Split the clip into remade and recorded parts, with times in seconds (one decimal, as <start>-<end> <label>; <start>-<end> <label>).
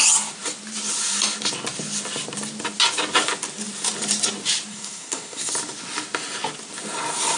0.0-4.7 recorded; 4.7-5.5 remade; 5.5-7.4 recorded